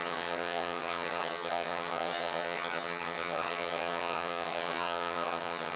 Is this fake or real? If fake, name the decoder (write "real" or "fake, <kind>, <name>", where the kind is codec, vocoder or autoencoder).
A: fake, vocoder, HiFi-GAN